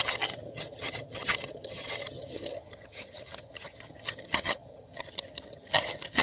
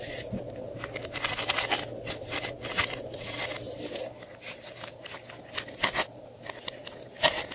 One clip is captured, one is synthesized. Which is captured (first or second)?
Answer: second